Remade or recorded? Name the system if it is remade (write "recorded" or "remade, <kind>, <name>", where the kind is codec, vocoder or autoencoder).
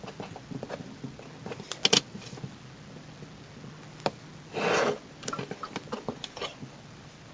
recorded